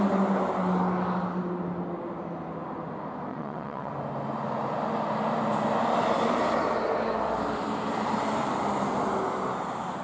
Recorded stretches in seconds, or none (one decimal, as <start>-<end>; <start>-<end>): 0.0-3.3; 3.9-10.0